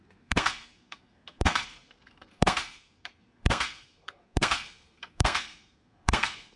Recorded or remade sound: remade